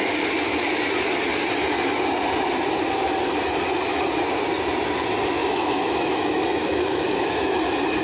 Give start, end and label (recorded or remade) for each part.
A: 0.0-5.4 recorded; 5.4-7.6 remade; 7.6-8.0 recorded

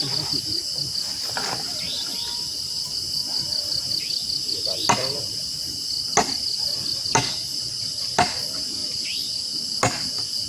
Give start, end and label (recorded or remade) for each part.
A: 0.0-10.5 recorded

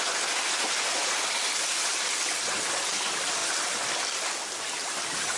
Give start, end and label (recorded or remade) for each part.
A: 0.0-5.4 recorded

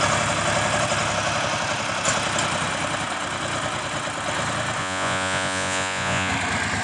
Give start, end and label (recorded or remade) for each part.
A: 0.0-4.8 recorded; 4.8-6.3 remade; 6.3-6.8 recorded